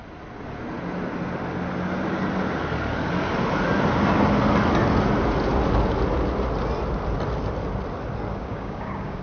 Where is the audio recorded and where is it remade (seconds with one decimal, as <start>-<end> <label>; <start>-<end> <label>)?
0.0-8.3 recorded; 8.3-9.2 remade